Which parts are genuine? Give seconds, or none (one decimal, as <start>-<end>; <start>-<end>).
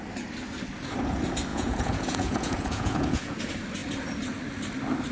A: 0.0-1.5; 3.4-5.1